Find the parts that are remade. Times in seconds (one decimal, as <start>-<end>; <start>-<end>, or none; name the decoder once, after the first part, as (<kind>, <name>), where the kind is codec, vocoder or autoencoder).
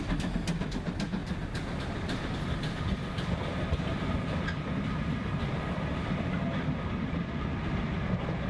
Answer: none